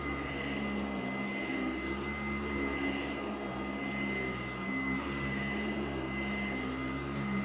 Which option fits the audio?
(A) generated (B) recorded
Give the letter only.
B